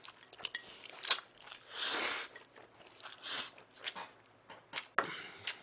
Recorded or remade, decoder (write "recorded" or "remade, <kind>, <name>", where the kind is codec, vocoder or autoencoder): recorded